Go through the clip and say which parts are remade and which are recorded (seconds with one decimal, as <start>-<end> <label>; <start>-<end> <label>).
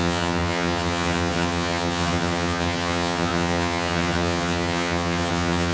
0.0-5.7 remade